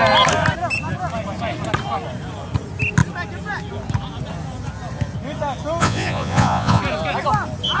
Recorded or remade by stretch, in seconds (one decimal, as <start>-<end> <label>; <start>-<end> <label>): 0.0-5.8 recorded; 5.8-6.8 remade; 6.8-7.8 recorded